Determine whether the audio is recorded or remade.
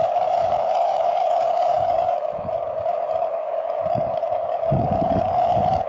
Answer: remade